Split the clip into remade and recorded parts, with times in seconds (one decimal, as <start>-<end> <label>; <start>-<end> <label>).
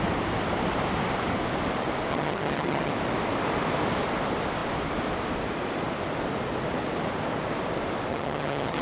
0.0-2.1 recorded; 2.1-2.9 remade; 2.9-8.1 recorded; 8.1-8.8 remade